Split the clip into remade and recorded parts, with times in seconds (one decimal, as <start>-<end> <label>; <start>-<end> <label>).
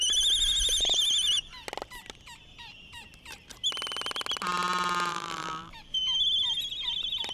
0.0-5.1 recorded; 5.1-5.7 remade; 5.7-7.3 recorded